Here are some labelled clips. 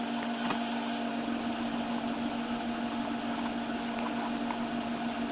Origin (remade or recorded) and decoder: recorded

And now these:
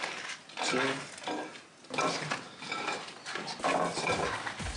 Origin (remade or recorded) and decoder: recorded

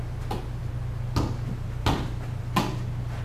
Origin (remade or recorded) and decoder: recorded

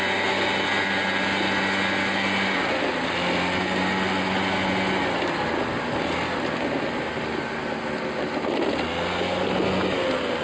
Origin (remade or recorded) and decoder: recorded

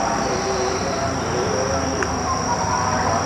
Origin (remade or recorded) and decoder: recorded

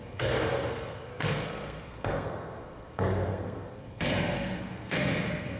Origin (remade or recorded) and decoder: remade, codec, SNAC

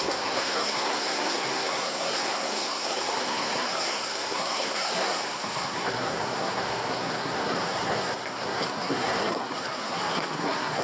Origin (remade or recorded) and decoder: remade, codec, SNAC